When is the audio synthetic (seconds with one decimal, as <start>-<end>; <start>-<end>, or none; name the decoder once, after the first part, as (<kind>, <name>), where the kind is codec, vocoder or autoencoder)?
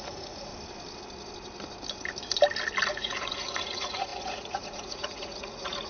0.0-0.5 (vocoder, Vocos); 2.9-5.9